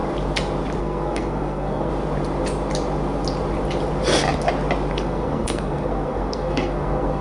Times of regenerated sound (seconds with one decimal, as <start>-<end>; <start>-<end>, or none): 0.8-1.9; 4.9-7.2